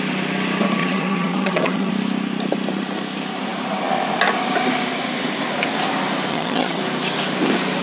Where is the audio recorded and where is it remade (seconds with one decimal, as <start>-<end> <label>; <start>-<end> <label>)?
0.0-0.8 recorded; 0.8-1.9 remade; 1.9-6.3 recorded; 6.3-6.8 remade; 6.8-7.8 recorded